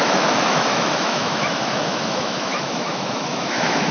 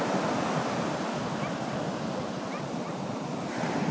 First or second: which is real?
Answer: second